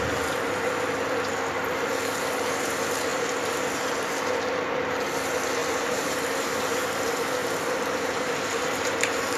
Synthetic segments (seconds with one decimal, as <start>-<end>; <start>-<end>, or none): 3.1-4.1; 5.6-6.2; 7.4-9.4